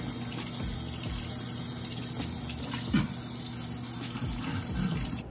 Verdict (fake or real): real